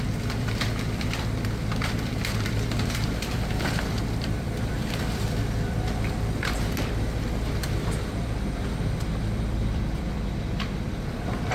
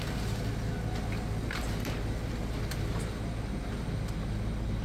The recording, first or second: second